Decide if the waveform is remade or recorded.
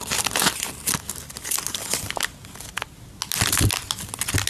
recorded